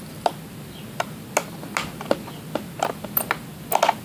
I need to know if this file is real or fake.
real